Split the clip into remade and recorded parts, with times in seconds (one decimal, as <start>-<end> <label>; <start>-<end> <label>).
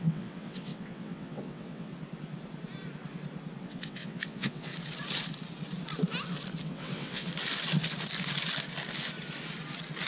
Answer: 0.0-1.9 remade; 1.9-3.6 recorded; 3.6-4.7 remade; 4.7-6.6 recorded; 6.6-7.3 remade; 7.3-10.1 recorded